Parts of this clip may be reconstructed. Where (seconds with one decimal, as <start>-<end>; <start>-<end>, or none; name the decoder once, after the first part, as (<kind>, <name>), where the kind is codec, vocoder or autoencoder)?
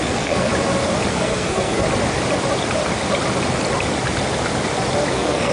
0.0-0.5 (codec, SNAC); 1.1-1.8; 5.1-5.5